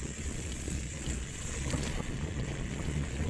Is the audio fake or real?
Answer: fake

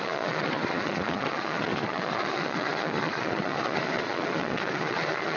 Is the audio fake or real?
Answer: fake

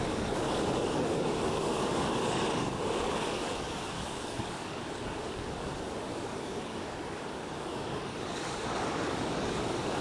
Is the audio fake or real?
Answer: fake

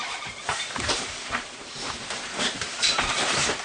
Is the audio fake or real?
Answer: fake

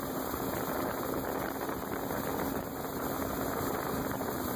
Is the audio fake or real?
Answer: real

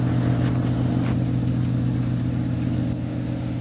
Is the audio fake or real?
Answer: real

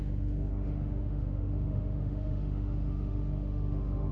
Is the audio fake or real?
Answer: fake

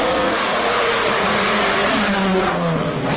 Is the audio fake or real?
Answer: fake